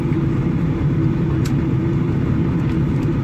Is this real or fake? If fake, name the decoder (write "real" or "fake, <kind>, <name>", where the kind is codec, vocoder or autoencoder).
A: fake, vocoder, BigVGAN v2